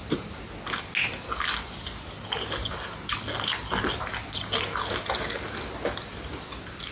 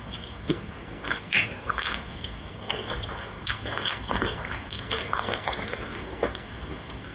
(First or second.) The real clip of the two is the first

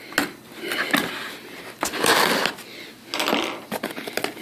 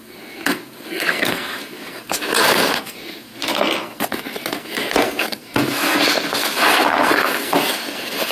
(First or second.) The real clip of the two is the first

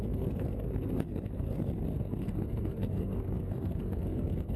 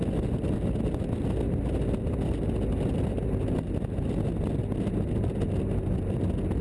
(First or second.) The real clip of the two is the second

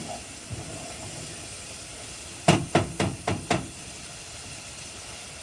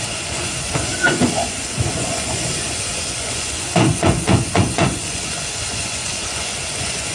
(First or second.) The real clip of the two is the first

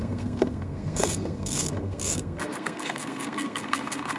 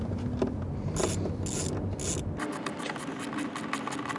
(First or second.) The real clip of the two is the second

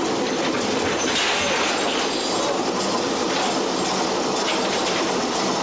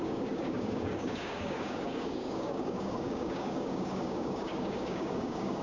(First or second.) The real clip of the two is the first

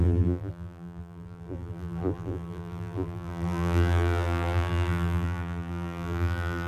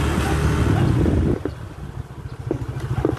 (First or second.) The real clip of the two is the second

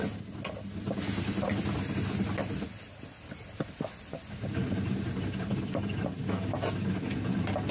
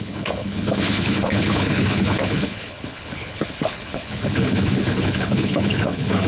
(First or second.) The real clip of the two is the first